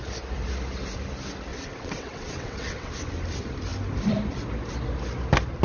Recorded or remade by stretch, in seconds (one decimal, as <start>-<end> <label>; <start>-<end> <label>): 0.0-1.5 recorded; 1.5-2.9 remade; 2.9-5.6 recorded